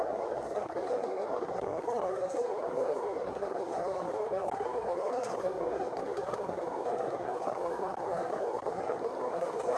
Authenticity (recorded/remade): remade